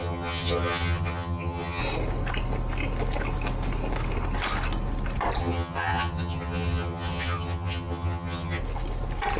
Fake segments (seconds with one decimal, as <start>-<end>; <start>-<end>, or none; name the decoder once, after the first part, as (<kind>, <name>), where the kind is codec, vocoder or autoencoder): 0.0-1.8 (vocoder, HiFi-GAN); 5.4-8.6